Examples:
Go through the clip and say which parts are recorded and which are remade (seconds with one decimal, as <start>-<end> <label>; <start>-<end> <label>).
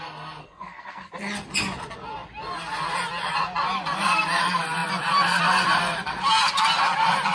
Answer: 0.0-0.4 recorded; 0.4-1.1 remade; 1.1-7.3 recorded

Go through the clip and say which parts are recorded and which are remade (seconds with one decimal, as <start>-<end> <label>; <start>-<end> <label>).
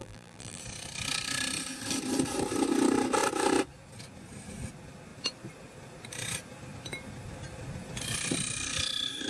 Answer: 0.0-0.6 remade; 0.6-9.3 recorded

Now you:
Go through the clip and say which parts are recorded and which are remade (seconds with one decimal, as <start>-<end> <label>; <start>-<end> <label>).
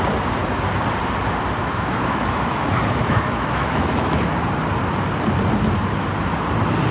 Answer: 0.0-1.6 recorded; 1.6-4.3 remade; 4.3-6.9 recorded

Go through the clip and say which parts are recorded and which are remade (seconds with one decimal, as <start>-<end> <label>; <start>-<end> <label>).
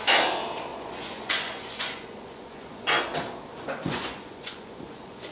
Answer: 0.0-0.7 recorded; 0.7-3.0 remade; 3.0-3.5 recorded; 3.5-5.3 remade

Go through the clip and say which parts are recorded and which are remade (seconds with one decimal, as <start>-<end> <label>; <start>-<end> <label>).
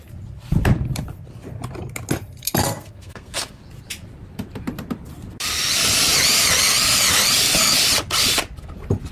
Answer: 0.0-2.6 recorded; 2.6-3.6 remade; 3.6-9.1 recorded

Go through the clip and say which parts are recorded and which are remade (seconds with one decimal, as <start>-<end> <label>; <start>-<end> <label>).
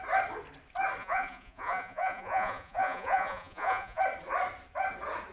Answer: 0.0-1.0 recorded; 1.0-4.0 remade; 4.0-5.3 recorded